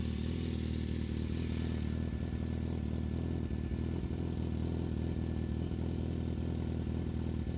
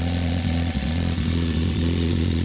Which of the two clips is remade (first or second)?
second